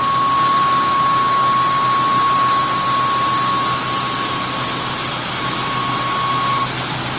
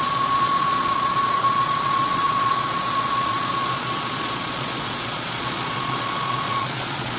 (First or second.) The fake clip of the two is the second